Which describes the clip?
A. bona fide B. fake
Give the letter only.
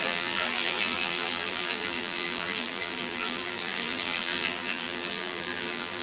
B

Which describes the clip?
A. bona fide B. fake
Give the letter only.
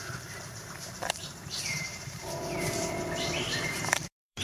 B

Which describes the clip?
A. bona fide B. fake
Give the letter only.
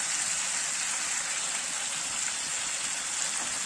A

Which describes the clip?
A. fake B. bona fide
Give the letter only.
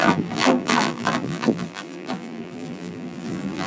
A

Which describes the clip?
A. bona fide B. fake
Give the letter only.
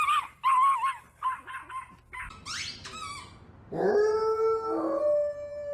A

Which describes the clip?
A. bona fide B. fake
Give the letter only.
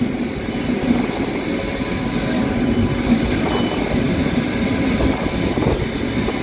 A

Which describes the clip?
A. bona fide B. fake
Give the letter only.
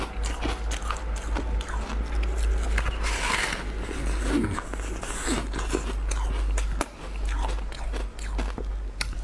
A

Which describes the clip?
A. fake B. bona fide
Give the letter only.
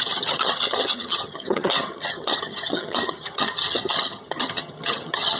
A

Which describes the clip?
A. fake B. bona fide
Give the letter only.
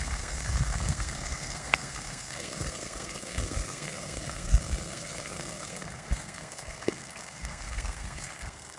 A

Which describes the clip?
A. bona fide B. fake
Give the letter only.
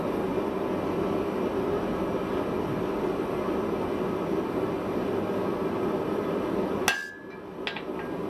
A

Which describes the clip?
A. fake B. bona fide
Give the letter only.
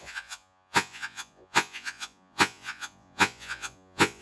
A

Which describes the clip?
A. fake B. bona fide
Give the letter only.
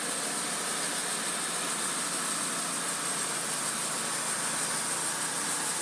B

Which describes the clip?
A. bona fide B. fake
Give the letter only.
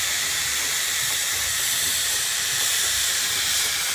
B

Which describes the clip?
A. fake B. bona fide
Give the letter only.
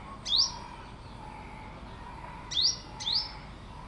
B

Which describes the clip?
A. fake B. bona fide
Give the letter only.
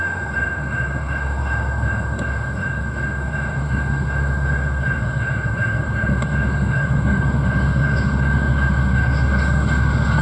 A